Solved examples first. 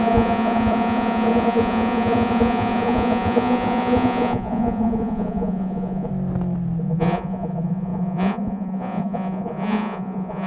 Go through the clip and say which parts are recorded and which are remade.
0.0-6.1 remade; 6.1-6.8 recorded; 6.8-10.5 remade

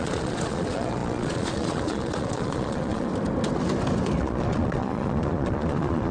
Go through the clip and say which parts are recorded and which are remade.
0.0-3.1 remade; 3.1-4.2 recorded; 4.2-6.1 remade

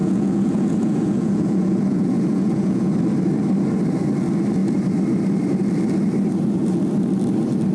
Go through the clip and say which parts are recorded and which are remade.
0.0-2.9 remade; 2.9-7.7 recorded

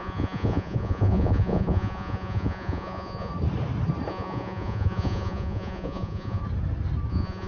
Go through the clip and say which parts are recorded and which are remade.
0.0-3.3 remade; 3.3-4.1 recorded; 4.1-6.4 remade; 6.4-7.1 recorded; 7.1-7.5 remade

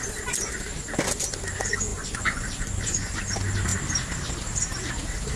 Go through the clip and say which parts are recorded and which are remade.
0.0-1.9 recorded; 1.9-3.2 remade; 3.2-5.4 recorded

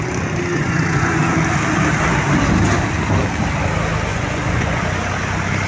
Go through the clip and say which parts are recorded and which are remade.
0.0-0.5 recorded; 0.5-1.2 remade; 1.2-4.1 recorded; 4.1-4.8 remade; 4.8-5.7 recorded

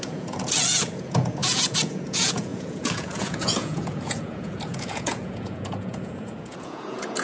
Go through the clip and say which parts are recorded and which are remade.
0.0-7.2 remade